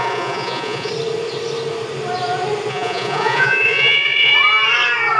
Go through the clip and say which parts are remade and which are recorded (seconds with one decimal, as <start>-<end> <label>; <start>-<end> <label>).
0.0-0.9 remade; 0.9-2.7 recorded; 2.7-4.3 remade; 4.3-5.2 recorded